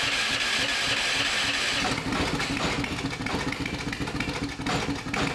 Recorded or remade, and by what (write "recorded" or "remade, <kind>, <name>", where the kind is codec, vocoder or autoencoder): recorded